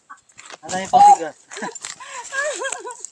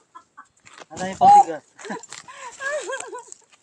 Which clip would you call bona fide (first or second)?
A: second